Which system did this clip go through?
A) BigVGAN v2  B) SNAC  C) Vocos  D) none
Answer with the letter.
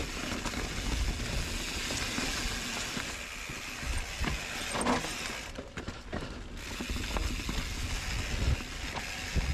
D